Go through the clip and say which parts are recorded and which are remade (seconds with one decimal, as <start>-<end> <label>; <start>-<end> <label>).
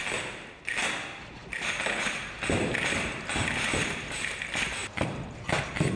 0.0-1.4 remade; 1.4-3.7 recorded; 3.7-6.0 remade